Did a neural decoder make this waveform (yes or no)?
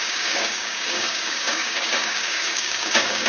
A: yes